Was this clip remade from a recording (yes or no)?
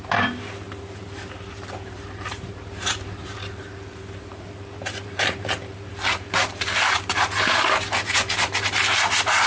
yes